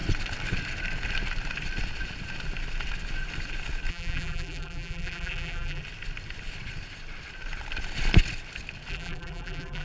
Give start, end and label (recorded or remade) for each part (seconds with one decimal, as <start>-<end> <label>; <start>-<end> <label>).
0.0-3.9 recorded; 3.9-5.8 remade; 5.8-8.9 recorded; 8.9-9.8 remade